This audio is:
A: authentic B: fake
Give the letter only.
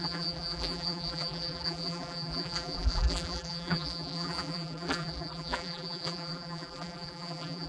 B